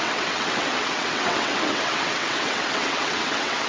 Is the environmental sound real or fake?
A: fake